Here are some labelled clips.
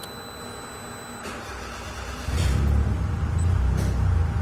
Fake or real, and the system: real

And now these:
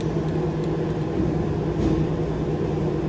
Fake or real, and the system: real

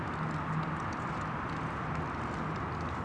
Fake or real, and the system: real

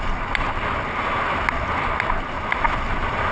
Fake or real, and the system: real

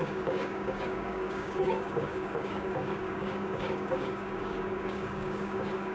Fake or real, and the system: fake, codec, DAC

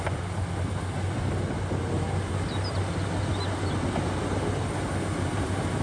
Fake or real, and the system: real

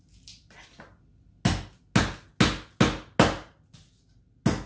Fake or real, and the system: real